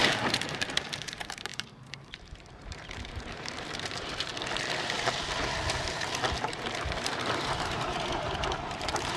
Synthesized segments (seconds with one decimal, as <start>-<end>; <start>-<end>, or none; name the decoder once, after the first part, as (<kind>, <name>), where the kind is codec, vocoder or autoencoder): 0.0-4.3 (vocoder, BigVGAN v2); 5.8-9.2